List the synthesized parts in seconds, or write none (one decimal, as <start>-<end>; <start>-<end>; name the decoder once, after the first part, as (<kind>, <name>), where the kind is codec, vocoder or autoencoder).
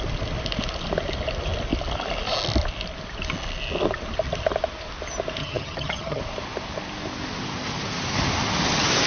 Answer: 5.4-6.2 (vocoder, HiFi-GAN)